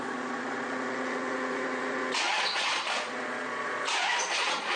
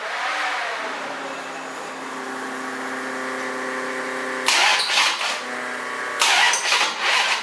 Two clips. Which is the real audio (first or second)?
second